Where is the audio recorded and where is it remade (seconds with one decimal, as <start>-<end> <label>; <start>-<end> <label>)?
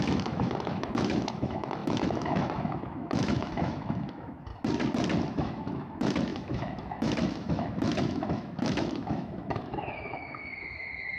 0.0-4.5 remade; 4.5-5.3 recorded; 5.3-11.2 remade